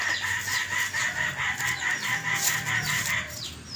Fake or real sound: real